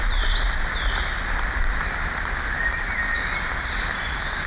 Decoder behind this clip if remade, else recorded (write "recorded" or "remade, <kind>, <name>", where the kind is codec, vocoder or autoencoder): recorded